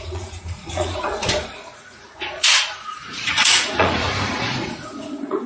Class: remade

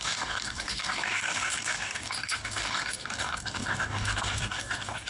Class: remade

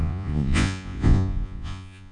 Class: remade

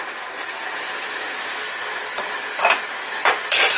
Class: remade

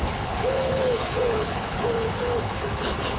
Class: remade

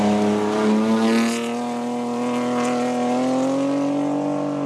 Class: recorded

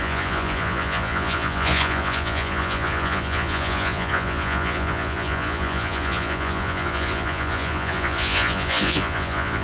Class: remade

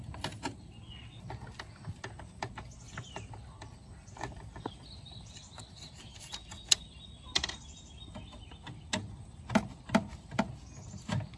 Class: recorded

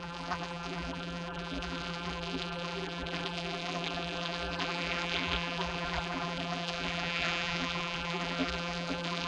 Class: remade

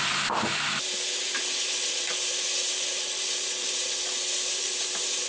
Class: remade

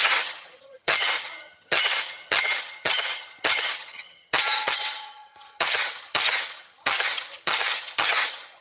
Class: remade